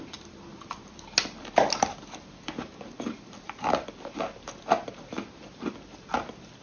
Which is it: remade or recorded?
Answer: recorded